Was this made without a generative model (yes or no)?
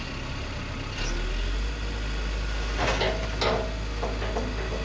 yes